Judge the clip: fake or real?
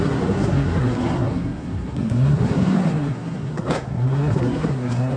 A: fake